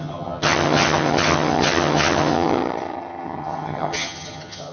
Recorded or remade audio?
remade